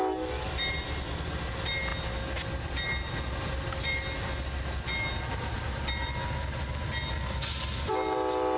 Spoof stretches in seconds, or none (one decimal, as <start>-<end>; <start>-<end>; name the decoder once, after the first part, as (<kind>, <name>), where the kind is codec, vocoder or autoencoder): none